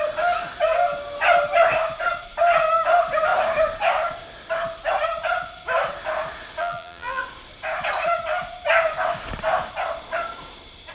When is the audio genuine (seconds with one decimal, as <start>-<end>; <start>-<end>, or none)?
0.0-6.6; 7.2-10.9